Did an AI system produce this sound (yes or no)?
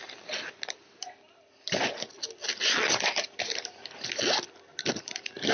no